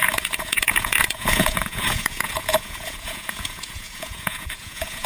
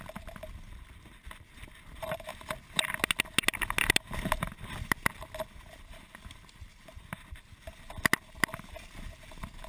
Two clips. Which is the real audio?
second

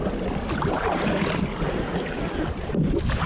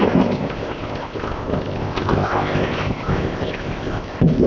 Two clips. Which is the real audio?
first